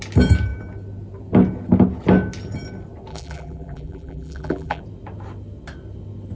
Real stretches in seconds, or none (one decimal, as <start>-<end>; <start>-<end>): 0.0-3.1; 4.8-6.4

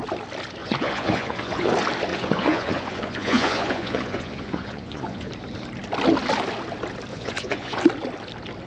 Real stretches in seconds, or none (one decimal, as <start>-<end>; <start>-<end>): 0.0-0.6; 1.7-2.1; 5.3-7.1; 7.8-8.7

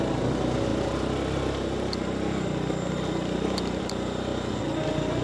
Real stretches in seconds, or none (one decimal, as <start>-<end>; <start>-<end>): 0.0-5.2

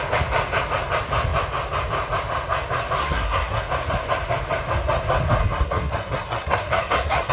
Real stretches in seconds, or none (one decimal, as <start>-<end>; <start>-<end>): 0.0-3.0; 3.6-5.4

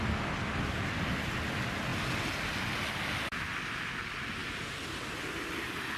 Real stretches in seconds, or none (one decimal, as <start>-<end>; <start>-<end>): 0.0-6.0